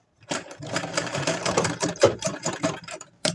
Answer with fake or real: fake